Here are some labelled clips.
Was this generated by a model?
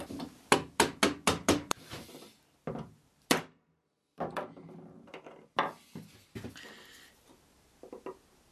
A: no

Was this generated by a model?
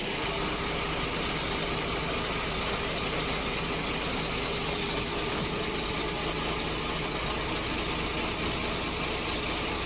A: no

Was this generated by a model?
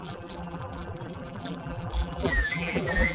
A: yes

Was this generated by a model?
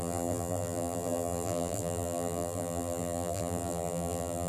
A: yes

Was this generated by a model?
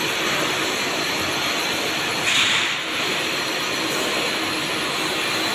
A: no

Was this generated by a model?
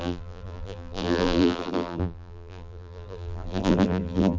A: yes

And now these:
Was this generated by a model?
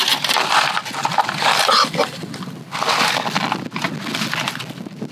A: no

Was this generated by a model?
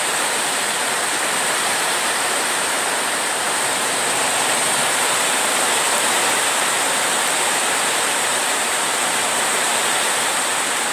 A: yes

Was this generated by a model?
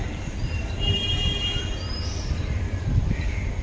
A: yes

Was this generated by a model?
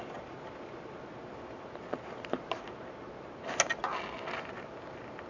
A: no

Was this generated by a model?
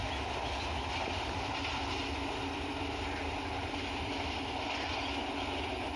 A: no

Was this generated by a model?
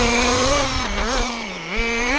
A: yes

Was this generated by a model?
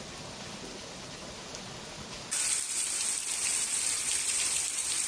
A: yes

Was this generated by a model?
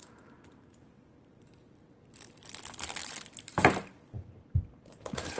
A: yes